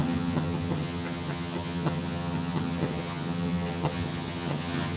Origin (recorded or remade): remade